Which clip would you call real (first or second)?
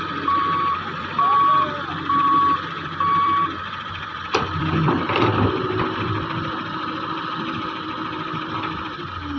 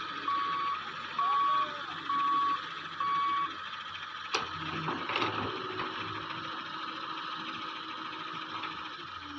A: second